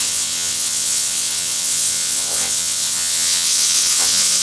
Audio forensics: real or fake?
fake